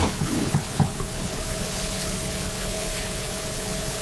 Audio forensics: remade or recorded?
remade